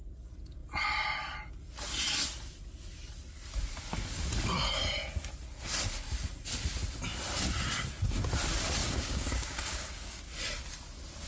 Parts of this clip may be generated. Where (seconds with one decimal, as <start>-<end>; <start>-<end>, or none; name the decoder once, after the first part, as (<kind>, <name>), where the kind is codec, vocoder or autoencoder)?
8.8-10.2 (codec, DAC)